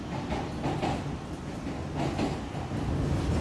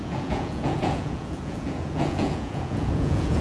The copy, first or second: second